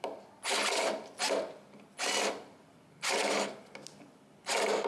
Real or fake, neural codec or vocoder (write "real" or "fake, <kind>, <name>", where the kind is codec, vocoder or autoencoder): real